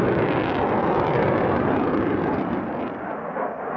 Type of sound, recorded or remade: recorded